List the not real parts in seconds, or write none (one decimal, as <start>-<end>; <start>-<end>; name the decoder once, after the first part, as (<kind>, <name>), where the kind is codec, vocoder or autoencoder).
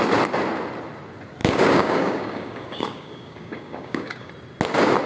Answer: 1.4-4.3 (codec, DAC)